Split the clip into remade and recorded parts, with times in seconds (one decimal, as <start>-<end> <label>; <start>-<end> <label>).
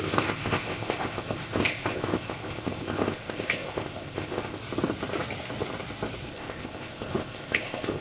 0.0-4.6 remade; 4.6-6.3 recorded; 6.3-8.0 remade